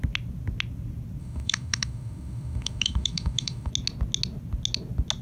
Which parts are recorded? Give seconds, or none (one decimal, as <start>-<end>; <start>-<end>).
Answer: 0.0-1.2; 3.7-5.2